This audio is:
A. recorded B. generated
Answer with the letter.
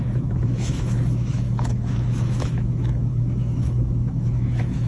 B